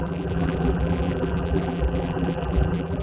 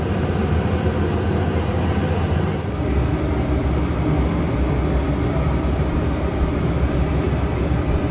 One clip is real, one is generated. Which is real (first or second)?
second